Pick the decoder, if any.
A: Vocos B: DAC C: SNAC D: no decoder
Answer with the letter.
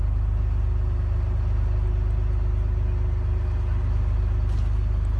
D